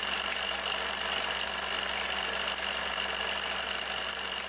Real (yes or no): yes